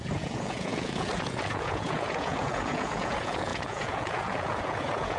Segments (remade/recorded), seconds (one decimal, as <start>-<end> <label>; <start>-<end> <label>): 0.0-5.2 remade